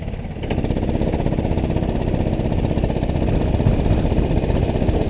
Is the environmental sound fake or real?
real